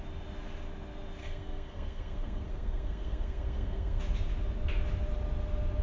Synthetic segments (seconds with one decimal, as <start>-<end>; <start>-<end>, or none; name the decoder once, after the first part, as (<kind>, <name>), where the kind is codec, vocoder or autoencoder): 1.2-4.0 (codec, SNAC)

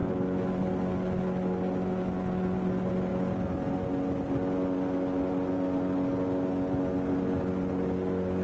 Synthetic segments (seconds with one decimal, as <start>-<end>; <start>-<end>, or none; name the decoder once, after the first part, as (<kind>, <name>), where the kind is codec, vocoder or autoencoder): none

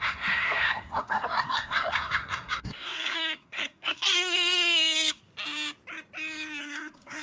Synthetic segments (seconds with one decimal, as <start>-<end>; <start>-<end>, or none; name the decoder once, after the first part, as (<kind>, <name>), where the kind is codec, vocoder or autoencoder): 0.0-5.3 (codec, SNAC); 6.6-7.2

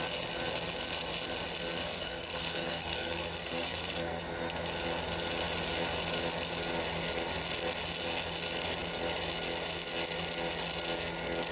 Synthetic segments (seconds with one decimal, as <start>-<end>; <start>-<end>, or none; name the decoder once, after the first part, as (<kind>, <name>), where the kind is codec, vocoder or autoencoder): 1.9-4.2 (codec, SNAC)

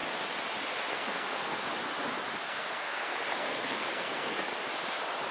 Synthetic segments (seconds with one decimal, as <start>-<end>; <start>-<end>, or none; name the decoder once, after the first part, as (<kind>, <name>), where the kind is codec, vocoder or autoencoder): 0.9-1.7 (codec, SNAC); 2.4-4.5

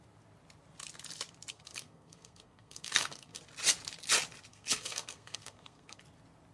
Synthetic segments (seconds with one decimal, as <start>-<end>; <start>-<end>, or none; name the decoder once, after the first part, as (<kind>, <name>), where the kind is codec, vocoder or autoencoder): 1.5-3.4 (codec, SNAC); 4.5-6.0

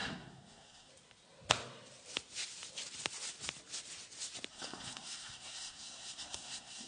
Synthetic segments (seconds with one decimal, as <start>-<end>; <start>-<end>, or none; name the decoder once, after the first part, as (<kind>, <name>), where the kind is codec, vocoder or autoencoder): 0.0-0.9 (codec, SNAC); 4.5-6.9

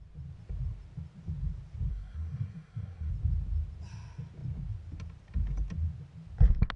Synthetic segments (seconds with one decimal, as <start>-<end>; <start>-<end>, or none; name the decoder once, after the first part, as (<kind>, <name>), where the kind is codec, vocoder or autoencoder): 1.9-3.1 (codec, SNAC)